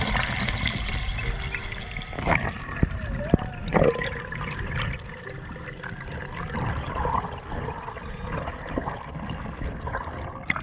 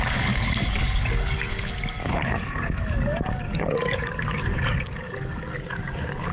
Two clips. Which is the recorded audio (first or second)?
first